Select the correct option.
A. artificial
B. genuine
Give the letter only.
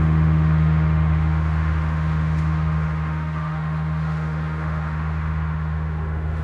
A